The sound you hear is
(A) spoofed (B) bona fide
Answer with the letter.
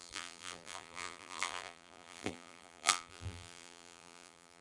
A